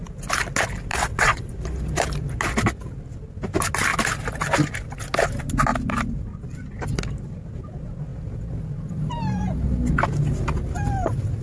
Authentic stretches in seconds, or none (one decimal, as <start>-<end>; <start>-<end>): 0.0-0.9; 1.5-11.4

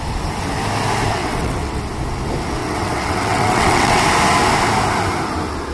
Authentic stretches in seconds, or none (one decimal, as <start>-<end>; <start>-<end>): 0.0-1.1; 1.8-2.6; 4.0-5.7

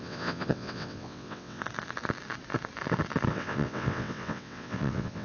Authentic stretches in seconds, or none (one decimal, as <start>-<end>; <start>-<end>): 1.6-3.3

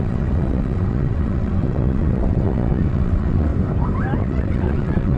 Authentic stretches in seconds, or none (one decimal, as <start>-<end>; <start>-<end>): 3.5-4.2

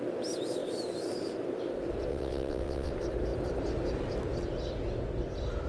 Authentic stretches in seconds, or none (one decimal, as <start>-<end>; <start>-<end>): 0.0-2.1; 2.9-5.7

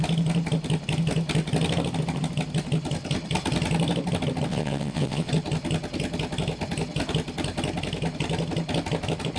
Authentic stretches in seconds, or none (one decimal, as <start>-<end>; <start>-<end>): 0.0-4.5; 5.3-9.4

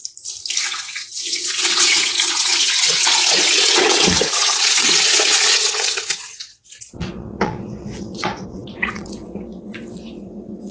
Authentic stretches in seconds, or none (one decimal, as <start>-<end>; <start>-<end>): 0.0-0.6